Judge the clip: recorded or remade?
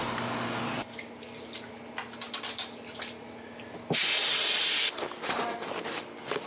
recorded